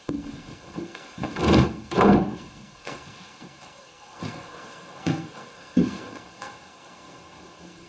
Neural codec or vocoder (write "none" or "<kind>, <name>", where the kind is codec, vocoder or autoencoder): codec, SNAC